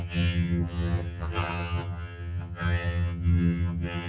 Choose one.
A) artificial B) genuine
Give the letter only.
A